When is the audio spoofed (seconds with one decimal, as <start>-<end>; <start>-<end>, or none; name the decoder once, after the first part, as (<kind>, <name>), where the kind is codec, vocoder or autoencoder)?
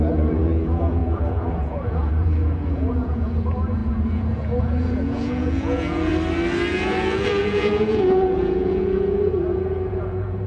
0.0-6.1 (vocoder, Vocos); 6.7-10.5